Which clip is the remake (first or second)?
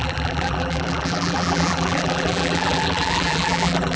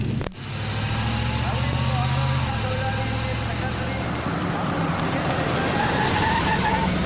first